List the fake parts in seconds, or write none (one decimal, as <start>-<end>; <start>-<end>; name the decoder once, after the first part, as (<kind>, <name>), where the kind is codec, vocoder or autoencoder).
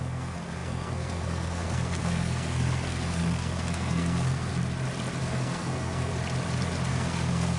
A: 0.0-4.5 (codec, SNAC); 5.2-6.1; 6.9-7.6